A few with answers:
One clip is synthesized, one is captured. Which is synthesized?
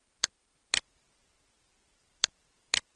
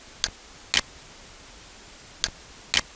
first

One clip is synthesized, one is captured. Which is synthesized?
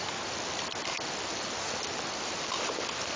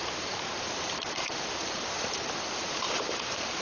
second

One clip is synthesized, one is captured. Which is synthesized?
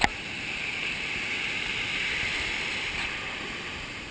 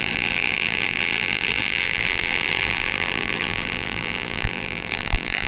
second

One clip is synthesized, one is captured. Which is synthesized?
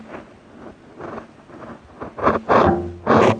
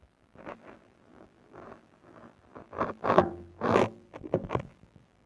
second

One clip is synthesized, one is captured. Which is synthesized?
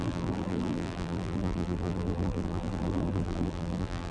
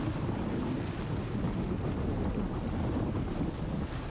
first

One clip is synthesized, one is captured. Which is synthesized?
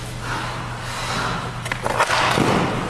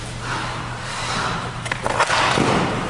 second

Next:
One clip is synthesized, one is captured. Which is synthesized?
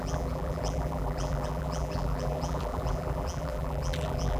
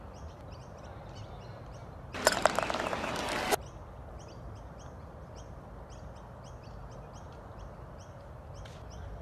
first